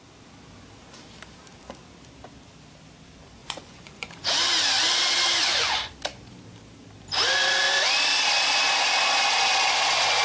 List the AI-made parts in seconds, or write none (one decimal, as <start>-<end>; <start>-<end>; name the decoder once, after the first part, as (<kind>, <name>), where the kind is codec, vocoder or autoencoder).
3.4-4.3 (vocoder, Vocos); 5.3-5.9